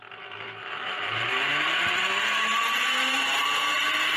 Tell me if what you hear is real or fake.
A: fake